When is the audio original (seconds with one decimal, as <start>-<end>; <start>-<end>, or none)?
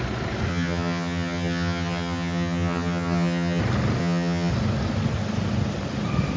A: 0.0-0.5; 3.6-4.0; 4.5-6.4